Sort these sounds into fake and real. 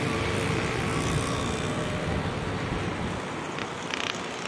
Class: real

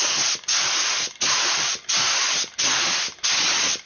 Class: real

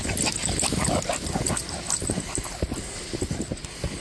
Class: real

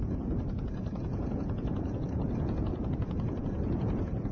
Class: fake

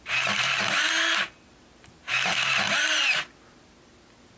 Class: real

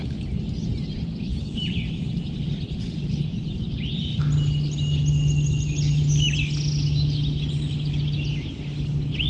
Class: real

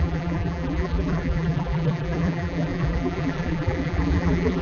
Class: fake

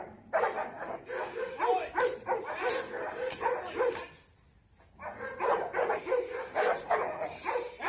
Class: real